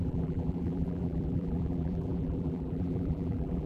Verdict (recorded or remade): remade